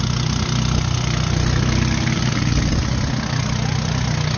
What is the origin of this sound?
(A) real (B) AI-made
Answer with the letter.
A